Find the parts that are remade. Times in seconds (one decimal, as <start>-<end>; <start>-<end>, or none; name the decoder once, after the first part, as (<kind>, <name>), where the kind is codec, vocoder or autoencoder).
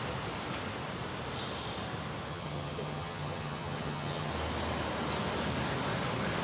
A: 2.3-4.3 (vocoder, HiFi-GAN)